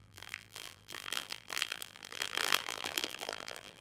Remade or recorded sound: remade